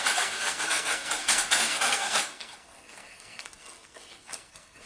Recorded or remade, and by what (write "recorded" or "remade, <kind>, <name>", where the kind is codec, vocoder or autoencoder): remade, codec, SNAC